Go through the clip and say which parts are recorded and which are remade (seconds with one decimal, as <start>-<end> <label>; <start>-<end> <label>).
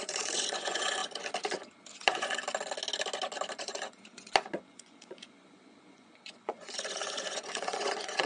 0.0-1.0 remade; 1.0-2.0 recorded; 2.0-2.4 remade; 2.4-3.6 recorded; 3.6-8.3 remade